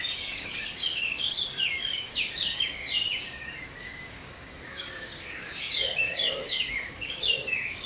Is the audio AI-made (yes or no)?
yes